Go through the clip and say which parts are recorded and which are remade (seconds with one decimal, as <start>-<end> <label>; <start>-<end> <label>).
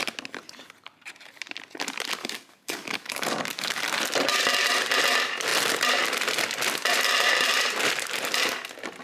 0.0-2.2 recorded; 2.2-3.8 remade; 3.8-9.0 recorded